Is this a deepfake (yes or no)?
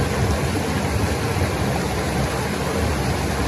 no